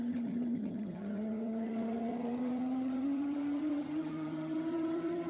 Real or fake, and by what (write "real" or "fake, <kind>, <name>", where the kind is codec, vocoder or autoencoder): fake, vocoder, HiFi-GAN